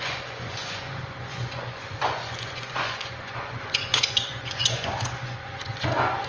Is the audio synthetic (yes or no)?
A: yes